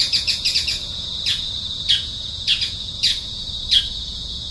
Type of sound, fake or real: fake